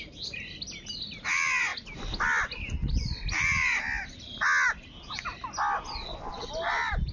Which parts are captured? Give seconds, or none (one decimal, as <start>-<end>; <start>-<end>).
0.0-7.1